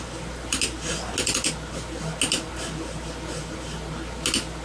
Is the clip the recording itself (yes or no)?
yes